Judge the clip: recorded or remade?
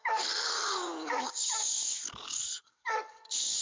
remade